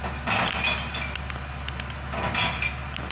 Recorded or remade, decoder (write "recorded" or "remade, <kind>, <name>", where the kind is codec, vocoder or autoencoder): recorded